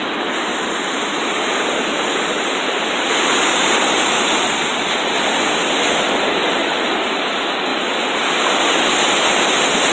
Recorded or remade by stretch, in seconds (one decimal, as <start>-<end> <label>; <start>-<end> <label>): 0.0-0.5 recorded; 0.5-4.5 remade; 4.5-6.4 recorded; 6.4-7.0 remade; 7.0-7.7 recorded; 7.7-8.6 remade; 8.6-9.9 recorded

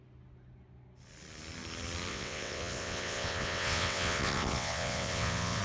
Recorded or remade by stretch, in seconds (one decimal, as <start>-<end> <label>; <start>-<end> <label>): 0.0-2.1 recorded; 2.1-5.6 remade

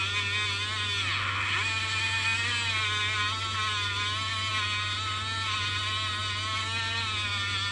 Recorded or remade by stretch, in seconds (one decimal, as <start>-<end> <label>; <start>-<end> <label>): 0.0-7.7 recorded